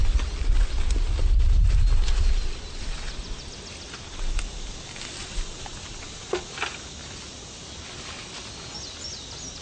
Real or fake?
real